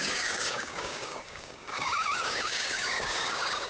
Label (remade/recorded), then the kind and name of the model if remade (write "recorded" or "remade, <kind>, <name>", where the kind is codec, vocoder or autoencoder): remade, codec, DAC